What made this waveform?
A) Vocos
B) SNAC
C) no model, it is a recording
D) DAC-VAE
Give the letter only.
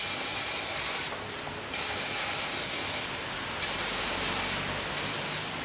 C